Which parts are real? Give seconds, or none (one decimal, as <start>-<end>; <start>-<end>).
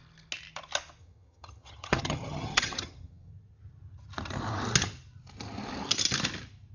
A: 0.0-1.0; 3.3-6.7